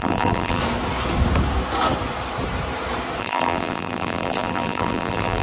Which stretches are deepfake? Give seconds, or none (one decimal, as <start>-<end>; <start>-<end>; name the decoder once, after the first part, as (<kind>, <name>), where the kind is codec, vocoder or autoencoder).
0.0-0.6 (vocoder, BigVGAN v2); 3.2-5.4